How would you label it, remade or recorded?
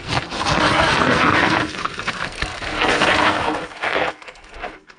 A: remade